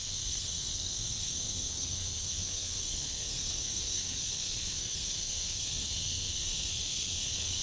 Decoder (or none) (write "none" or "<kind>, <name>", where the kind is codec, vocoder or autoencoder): codec, SNAC